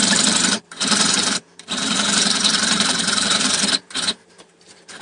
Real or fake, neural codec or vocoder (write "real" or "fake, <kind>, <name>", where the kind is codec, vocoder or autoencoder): fake, vocoder, BigVGAN v2